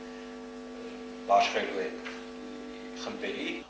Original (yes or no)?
yes